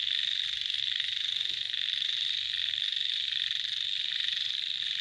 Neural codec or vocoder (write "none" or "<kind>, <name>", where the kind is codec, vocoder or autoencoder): none